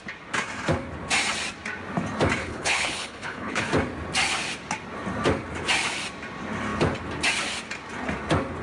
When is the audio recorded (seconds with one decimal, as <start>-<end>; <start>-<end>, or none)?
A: 0.0-2.4; 3.7-8.6